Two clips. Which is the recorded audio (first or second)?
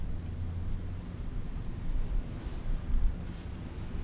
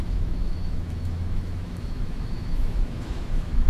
first